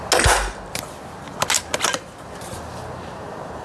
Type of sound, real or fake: real